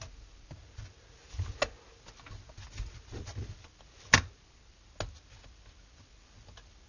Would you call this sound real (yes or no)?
yes